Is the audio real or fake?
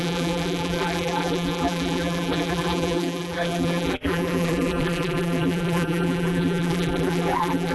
fake